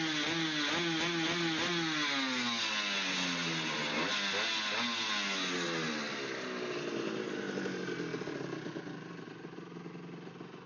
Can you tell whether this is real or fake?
real